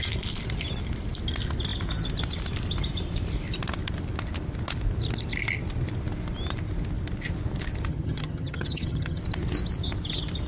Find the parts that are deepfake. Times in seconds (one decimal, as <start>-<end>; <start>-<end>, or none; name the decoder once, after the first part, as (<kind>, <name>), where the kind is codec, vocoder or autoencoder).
7.9-9.2 (vocoder, HiFi-GAN)